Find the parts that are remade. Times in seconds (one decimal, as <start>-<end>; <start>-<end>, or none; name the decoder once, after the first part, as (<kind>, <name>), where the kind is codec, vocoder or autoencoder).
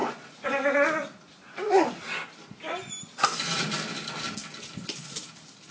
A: 0.0-1.9 (vocoder, BigVGAN v2); 2.3-3.6; 4.4-5.0